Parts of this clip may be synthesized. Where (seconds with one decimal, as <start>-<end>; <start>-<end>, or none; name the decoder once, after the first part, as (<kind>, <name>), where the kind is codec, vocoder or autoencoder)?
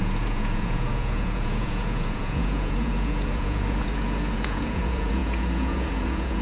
0.0-6.4 (vocoder, Vocos)